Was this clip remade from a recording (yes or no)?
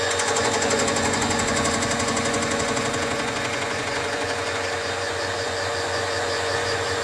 yes